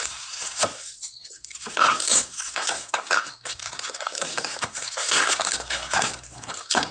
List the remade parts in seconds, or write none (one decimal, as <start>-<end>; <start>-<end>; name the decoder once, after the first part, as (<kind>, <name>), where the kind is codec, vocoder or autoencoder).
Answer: 0.0-6.9 (codec, SNAC)